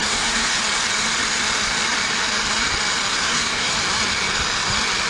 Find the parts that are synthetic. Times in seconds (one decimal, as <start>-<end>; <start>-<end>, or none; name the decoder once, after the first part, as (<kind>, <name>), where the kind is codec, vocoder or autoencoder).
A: 0.0-0.6 (codec, SNAC); 3.1-3.7

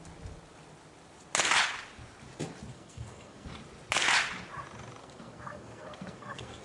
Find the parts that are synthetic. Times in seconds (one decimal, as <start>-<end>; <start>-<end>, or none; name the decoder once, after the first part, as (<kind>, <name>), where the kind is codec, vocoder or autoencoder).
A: 2.7-3.5 (codec, SNAC); 5.0-6.6

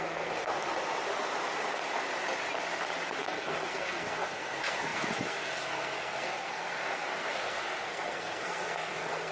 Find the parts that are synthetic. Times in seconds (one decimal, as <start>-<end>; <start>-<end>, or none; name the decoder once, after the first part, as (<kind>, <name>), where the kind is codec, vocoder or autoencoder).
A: 0.0-0.5 (codec, SNAC); 3.2-9.3